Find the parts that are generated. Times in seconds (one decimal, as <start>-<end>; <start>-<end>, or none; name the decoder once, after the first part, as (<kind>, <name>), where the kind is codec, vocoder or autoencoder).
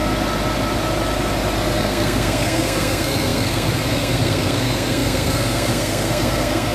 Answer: 1.8-6.7 (codec, SNAC)